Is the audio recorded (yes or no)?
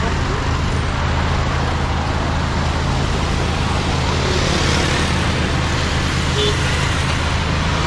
yes